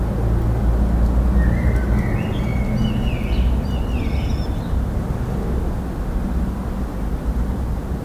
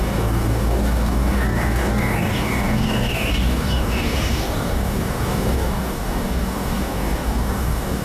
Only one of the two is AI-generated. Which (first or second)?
second